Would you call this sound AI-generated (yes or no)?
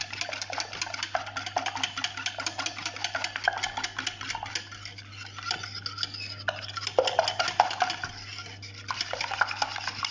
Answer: no